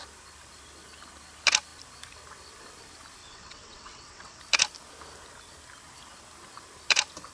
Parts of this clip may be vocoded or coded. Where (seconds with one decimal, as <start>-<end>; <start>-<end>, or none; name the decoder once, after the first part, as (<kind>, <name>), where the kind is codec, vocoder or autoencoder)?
3.2-4.4 (vocoder, WaveNeXt)